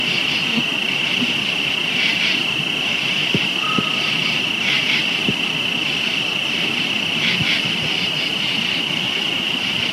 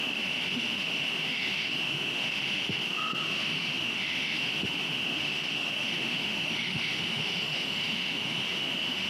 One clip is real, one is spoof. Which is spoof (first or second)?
second